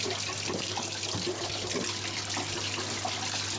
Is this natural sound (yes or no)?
yes